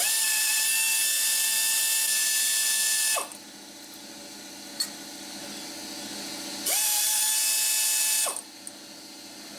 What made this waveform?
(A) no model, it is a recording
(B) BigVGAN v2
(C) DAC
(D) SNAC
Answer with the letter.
A